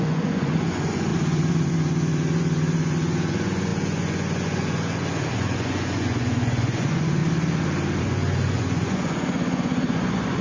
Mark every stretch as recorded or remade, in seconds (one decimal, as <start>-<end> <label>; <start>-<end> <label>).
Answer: 0.0-7.2 remade; 7.2-8.0 recorded; 8.0-10.4 remade